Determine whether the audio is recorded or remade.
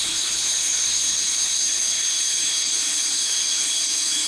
remade